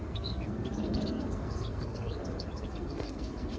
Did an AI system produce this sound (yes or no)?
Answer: yes